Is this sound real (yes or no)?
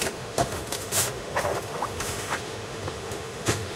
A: no